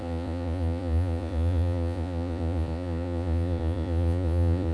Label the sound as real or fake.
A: fake